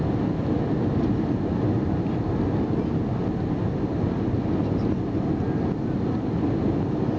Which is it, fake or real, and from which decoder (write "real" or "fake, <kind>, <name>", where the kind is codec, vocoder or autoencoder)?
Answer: real